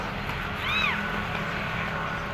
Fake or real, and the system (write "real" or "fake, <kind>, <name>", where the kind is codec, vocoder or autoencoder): real